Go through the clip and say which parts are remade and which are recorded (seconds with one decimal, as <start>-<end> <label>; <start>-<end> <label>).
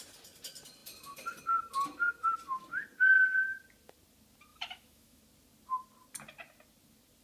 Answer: 0.0-4.5 recorded; 4.5-5.2 remade; 5.2-7.2 recorded